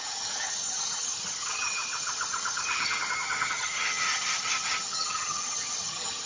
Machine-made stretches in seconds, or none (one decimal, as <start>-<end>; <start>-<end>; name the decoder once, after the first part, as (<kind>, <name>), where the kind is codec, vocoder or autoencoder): 0.0-6.3 (vocoder, HiFi-GAN)